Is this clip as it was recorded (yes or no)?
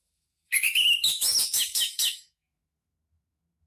no